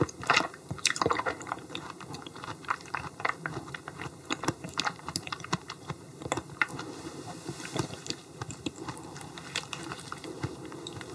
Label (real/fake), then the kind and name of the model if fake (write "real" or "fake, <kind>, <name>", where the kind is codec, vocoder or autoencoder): fake, vocoder, BigVGAN v2